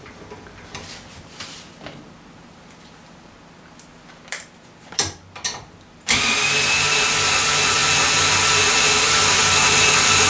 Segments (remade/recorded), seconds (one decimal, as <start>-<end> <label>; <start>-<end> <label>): 0.0-10.3 recorded